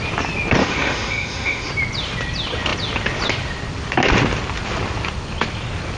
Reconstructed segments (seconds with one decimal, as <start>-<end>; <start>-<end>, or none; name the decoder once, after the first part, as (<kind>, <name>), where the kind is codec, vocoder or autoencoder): 0.6-1.7 (autoencoder, DAC-VAE)